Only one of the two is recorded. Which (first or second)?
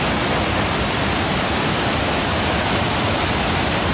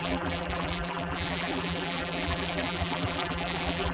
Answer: first